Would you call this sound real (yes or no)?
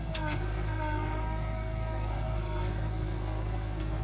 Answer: no